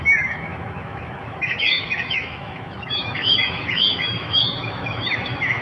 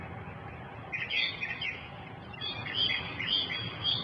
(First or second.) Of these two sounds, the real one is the second